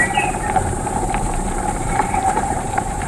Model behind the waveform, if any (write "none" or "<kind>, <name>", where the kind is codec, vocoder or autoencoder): vocoder, BigVGAN v2